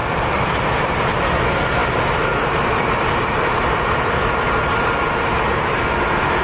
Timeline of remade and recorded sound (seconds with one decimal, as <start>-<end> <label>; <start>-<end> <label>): 0.0-1.8 recorded; 1.8-4.7 remade; 4.7-6.4 recorded